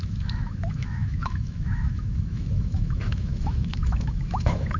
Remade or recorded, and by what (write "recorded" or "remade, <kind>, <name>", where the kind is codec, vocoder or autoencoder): remade, autoencoder, DAC-VAE